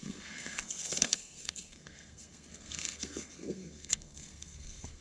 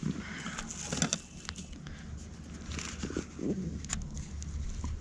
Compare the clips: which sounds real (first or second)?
second